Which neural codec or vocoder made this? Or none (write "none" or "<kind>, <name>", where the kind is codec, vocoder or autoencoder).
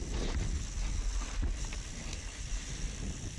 none